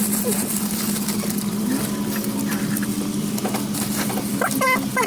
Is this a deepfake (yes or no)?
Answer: no